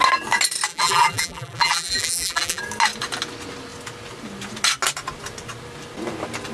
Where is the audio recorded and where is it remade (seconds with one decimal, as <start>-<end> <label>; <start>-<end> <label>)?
0.0-0.7 recorded; 0.7-2.6 remade; 2.6-6.5 recorded